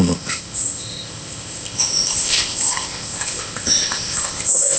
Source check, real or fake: fake